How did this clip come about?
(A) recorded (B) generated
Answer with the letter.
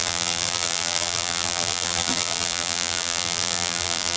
B